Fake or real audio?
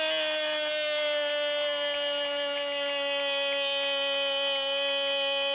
real